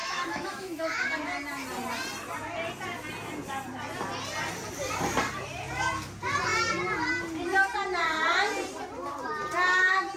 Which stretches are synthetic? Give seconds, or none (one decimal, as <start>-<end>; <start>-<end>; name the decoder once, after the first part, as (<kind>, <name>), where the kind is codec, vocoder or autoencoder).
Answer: 0.0-1.1 (autoencoder, DAC-VAE)